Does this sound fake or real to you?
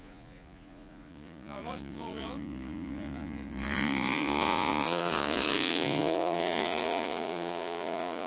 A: fake